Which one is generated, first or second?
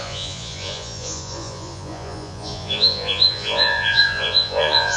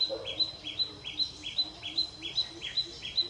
first